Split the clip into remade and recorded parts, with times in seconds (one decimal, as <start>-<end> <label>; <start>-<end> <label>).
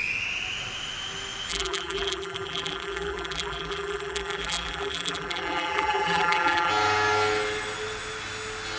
0.0-1.5 recorded; 1.5-6.7 remade; 6.7-8.8 recorded